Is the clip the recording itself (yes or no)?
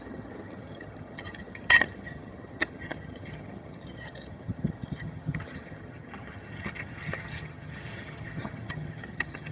no